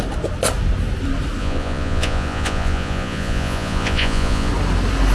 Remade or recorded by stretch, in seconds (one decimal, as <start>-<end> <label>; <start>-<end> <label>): 0.0-1.4 recorded; 1.4-4.5 remade; 4.5-5.1 recorded